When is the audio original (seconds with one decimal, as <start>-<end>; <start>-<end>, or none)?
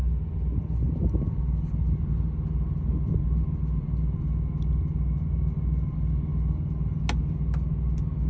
0.0-8.3